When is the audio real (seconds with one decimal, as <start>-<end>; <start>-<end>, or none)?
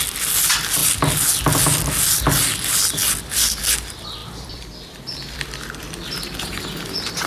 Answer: 0.0-4.2; 6.5-7.3